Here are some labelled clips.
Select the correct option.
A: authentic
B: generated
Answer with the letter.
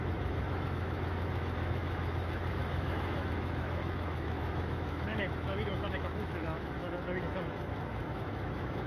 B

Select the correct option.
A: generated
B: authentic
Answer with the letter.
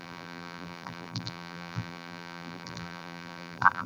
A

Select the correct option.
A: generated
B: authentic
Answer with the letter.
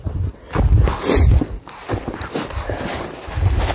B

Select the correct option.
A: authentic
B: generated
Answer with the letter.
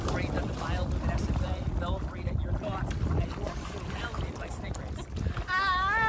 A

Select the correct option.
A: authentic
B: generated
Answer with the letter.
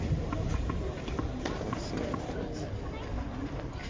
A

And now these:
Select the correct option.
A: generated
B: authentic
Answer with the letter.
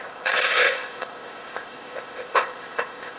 A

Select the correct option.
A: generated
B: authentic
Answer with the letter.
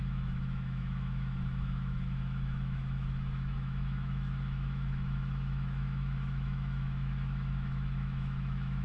A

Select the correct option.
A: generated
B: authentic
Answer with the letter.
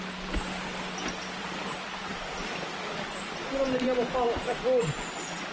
B